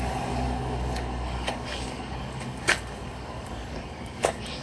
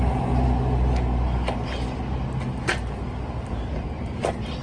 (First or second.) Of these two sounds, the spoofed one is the first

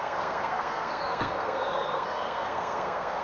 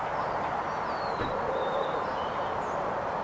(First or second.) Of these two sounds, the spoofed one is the first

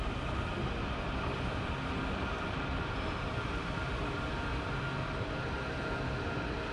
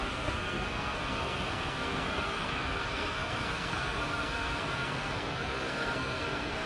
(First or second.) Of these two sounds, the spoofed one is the second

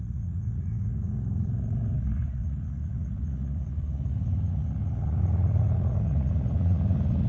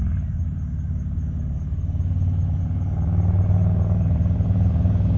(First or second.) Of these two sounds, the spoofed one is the first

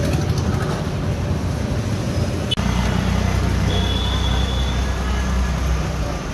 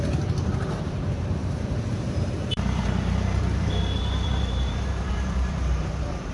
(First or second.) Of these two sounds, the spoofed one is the second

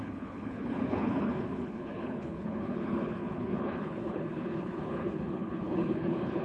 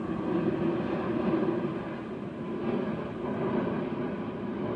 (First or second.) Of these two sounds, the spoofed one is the first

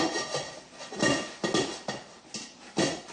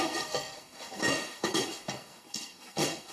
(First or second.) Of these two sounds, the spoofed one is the second